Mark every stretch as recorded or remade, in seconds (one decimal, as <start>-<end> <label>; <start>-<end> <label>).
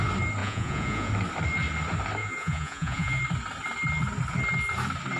0.0-0.4 recorded; 0.4-1.1 remade; 1.1-2.2 recorded; 2.2-3.2 remade; 3.2-5.2 recorded